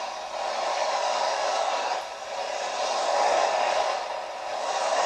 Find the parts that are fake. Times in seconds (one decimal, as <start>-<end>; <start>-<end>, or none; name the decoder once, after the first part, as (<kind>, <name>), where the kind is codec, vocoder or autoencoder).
0.7-2.0 (codec, DAC); 3.0-3.9; 4.5-5.1